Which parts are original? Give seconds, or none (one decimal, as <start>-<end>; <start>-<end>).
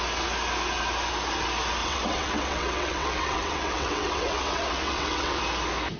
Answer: 0.0-1.8; 5.4-6.0